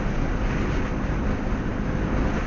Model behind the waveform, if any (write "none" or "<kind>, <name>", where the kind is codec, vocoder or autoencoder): none